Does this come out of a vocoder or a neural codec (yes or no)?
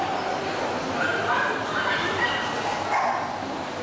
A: no